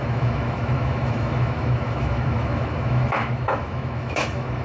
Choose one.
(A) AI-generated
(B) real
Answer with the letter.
A